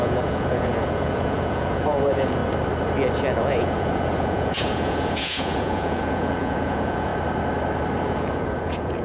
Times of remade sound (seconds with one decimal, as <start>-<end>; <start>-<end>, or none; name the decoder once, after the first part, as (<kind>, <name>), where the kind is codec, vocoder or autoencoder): 0.0-2.4 (vocoder, Vocos); 3.4-7.1; 8.0-9.0